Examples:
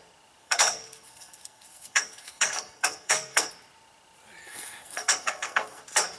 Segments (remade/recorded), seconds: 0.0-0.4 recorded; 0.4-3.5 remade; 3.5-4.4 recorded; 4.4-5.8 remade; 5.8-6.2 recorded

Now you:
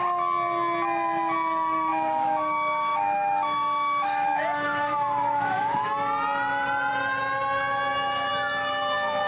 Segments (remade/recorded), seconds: 0.0-1.9 recorded; 1.9-5.9 remade; 5.9-9.3 recorded

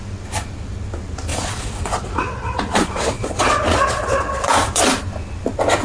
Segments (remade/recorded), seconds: 0.0-1.3 recorded; 1.3-4.8 remade; 4.8-5.8 recorded

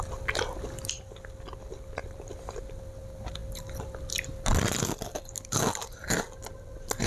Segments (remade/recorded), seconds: 0.0-2.0 recorded; 2.0-2.8 remade; 2.8-7.1 recorded

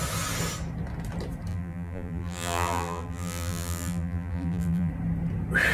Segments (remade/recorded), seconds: 0.0-1.5 recorded; 1.5-4.9 remade; 4.9-5.7 recorded

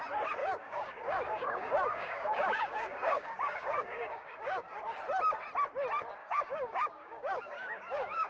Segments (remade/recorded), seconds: 0.0-0.4 recorded; 0.4-4.8 remade; 4.8-6.2 recorded; 6.2-8.3 remade

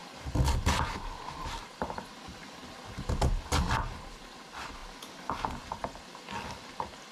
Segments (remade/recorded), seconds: 0.0-4.8 recorded; 4.8-6.2 remade; 6.2-7.1 recorded

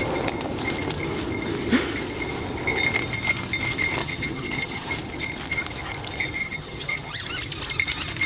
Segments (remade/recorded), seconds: 0.0-4.0 recorded; 4.0-4.9 remade; 4.9-6.4 recorded; 6.4-7.3 remade; 7.3-8.3 recorded